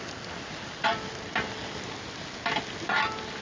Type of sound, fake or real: real